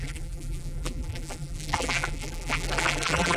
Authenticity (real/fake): fake